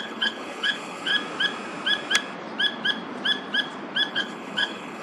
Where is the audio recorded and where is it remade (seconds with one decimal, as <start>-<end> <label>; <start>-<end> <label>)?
0.0-1.1 remade; 1.1-4.1 recorded; 4.1-5.0 remade